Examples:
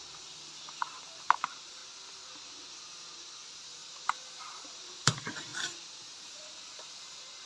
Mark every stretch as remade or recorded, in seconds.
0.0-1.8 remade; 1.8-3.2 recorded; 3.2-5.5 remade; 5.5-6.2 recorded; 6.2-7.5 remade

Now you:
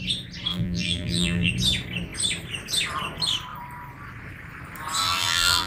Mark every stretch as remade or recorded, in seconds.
0.0-0.5 recorded; 0.5-1.5 remade; 1.5-5.0 recorded; 5.0-5.7 remade

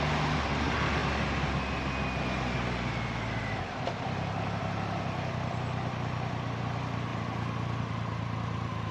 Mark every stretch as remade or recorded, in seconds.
0.0-8.9 recorded

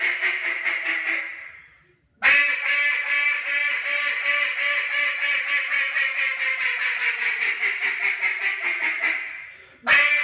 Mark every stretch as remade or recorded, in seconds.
0.0-10.2 recorded

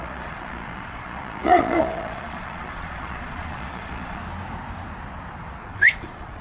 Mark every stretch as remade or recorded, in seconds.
0.0-4.2 remade; 4.2-5.6 recorded; 5.6-6.4 remade

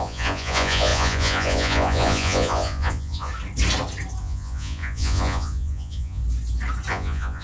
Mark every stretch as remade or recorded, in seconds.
0.0-3.3 remade; 3.3-4.2 recorded; 4.2-6.2 remade; 6.2-6.9 recorded; 6.9-7.4 remade

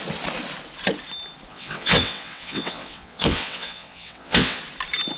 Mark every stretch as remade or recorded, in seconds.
0.0-1.5 recorded; 1.5-4.6 remade; 4.6-5.2 recorded

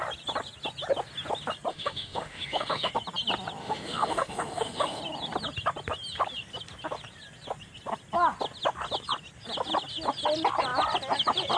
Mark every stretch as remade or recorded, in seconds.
0.0-1.7 recorded; 1.7-2.9 remade; 2.9-3.6 recorded; 3.6-5.0 remade; 5.0-11.6 recorded